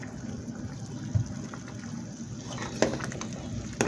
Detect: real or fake real